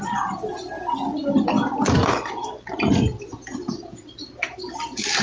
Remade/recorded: recorded